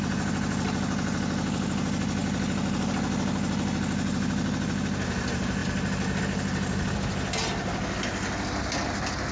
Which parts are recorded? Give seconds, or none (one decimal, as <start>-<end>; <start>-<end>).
0.0-9.3